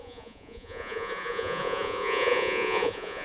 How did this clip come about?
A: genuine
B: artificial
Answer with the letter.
B